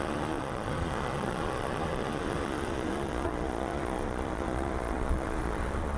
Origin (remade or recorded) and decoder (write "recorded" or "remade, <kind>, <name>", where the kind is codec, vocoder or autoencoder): remade, vocoder, Vocos